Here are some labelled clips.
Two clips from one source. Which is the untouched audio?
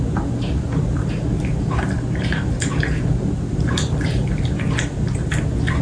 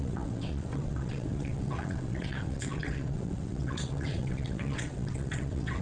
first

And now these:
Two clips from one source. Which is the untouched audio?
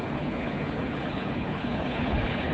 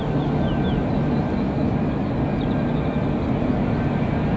second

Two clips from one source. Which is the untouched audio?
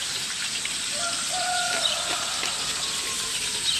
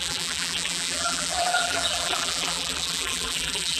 first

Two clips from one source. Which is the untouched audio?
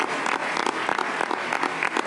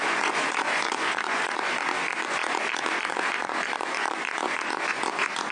first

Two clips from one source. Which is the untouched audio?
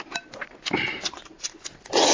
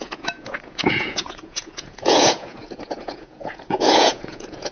first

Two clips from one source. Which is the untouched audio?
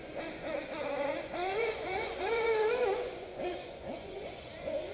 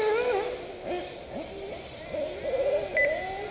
second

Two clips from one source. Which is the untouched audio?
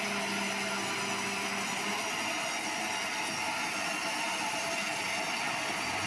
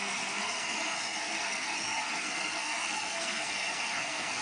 first